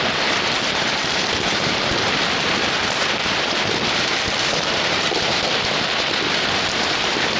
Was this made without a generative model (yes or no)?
no